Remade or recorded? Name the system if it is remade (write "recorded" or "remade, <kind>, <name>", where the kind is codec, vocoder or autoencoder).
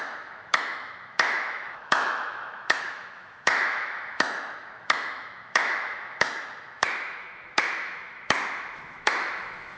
remade, autoencoder, DAC-VAE